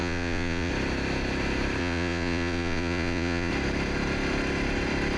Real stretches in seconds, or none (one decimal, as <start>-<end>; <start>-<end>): 0.7-1.8; 3.5-5.2